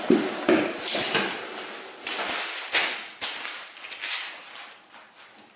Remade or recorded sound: recorded